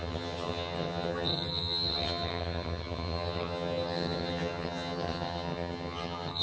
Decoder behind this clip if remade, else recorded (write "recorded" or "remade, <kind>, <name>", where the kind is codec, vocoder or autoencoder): remade, vocoder, HiFi-GAN